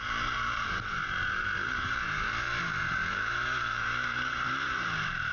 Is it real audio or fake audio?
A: fake